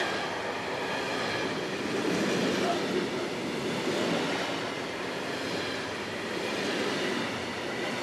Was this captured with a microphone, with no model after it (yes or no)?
yes